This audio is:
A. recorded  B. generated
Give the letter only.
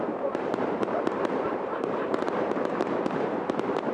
B